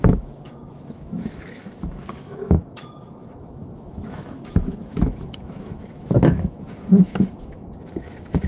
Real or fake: fake